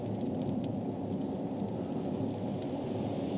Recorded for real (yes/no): yes